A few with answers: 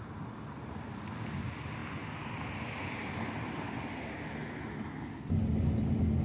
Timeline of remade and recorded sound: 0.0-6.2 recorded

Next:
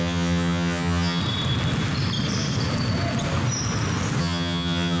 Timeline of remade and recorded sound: 0.0-1.2 remade; 1.2-4.2 recorded; 4.2-5.0 remade

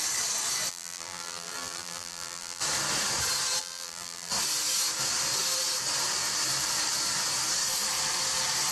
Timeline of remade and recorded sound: 0.0-0.7 recorded; 0.7-2.6 remade; 2.6-3.6 recorded; 3.6-4.3 remade; 4.3-8.7 recorded

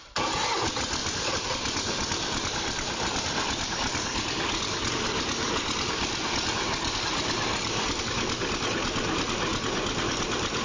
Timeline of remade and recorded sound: 0.0-1.0 recorded; 1.0-4.9 remade; 4.9-7.5 recorded; 7.5-8.0 remade; 8.0-10.6 recorded